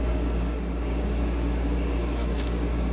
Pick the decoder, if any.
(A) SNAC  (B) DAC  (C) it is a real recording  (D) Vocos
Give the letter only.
B